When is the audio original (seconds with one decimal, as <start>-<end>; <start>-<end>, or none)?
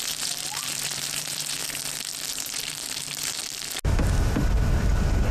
1.6-2.3; 3.4-5.3